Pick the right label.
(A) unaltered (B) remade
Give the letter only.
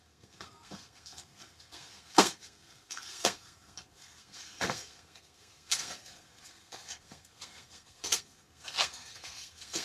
B